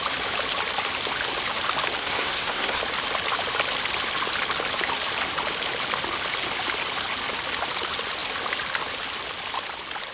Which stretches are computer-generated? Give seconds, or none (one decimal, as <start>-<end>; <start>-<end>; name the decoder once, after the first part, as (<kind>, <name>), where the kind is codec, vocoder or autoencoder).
2.0-2.8 (codec, SNAC)